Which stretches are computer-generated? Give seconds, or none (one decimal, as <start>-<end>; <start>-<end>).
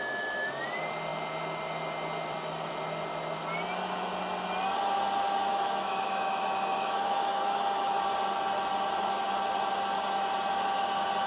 5.5-8.0